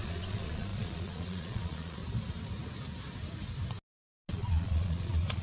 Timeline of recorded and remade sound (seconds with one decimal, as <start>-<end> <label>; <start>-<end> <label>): 0.0-2.0 remade; 2.0-4.3 recorded; 4.3-5.4 remade